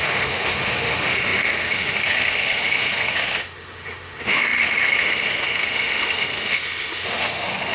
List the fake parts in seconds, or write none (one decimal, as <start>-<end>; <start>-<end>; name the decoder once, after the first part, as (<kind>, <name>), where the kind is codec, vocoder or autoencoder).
0.0-7.7 (autoencoder, DAC-VAE)